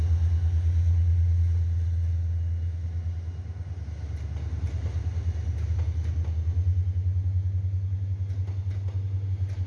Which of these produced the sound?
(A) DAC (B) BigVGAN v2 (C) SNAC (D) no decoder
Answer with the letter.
D